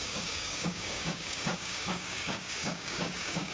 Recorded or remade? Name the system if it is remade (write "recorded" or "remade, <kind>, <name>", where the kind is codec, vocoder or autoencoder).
remade, codec, DAC